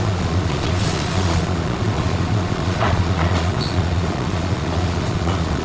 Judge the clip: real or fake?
fake